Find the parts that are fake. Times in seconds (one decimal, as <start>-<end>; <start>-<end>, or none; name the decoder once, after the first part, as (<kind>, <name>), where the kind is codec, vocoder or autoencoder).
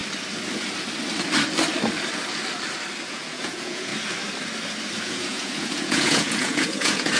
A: 3.0-3.9 (vocoder, Vocos); 5.0-7.2